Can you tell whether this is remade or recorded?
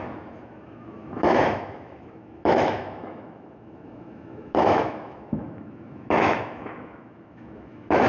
remade